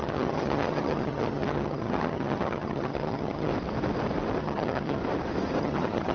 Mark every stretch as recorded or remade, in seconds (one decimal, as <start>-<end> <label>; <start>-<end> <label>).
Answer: 0.0-3.5 remade; 3.5-4.4 recorded; 4.4-5.0 remade; 5.0-5.6 recorded; 5.6-6.1 remade